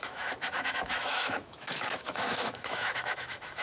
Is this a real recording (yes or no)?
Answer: no